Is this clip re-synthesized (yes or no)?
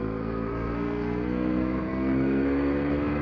yes